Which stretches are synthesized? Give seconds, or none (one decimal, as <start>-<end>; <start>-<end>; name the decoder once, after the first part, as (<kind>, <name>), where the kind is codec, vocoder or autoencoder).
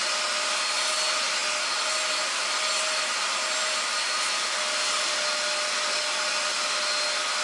none